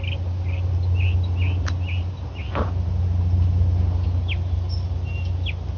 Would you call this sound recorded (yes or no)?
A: yes